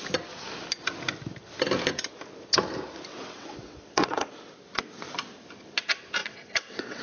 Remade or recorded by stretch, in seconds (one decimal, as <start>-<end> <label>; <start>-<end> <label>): 0.0-3.1 recorded; 3.1-4.3 remade; 4.3-6.2 recorded; 6.2-7.0 remade